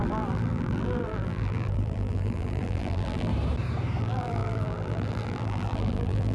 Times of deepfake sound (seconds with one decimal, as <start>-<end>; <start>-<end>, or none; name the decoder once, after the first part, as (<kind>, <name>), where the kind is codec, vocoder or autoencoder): 0.0-3.3 (vocoder, BigVGAN v2); 4.0-6.3